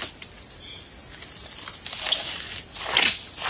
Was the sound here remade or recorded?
recorded